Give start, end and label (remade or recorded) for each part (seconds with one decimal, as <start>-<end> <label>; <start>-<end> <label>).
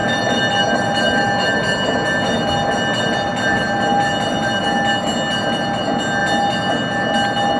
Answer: 0.0-7.6 recorded